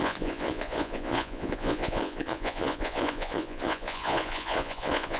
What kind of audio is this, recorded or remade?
remade